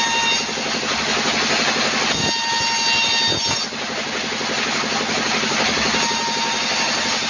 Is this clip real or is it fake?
real